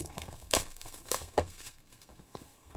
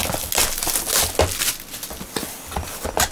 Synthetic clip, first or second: first